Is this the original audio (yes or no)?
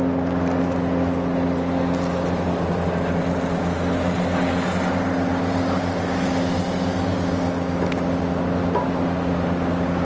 yes